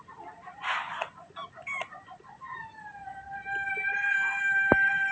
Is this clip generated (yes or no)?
no